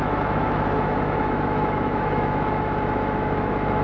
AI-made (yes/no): yes